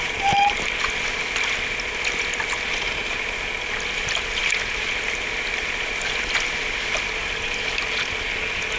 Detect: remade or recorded recorded